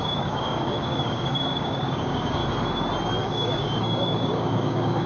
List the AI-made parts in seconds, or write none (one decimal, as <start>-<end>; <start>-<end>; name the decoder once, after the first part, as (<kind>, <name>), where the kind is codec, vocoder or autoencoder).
0.0-2.4 (codec, DAC); 3.2-5.1